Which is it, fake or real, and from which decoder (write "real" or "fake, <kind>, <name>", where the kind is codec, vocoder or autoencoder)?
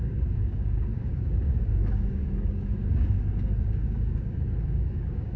fake, codec, DAC